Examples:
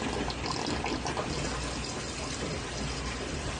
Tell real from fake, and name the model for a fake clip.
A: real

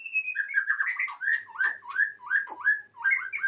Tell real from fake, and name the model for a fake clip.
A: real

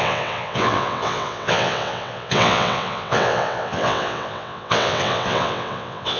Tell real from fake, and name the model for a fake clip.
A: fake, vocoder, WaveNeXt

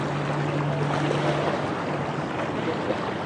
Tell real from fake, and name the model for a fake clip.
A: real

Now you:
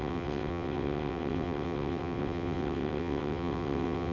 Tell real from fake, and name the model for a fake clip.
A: fake, vocoder, WaveNeXt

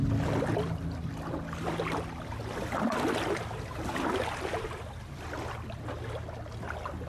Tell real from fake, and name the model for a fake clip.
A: real